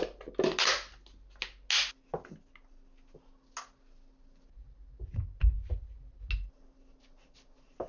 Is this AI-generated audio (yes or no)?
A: no